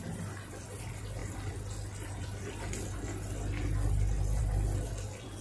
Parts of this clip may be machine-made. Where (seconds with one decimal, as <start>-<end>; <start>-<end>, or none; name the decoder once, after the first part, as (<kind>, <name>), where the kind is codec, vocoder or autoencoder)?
none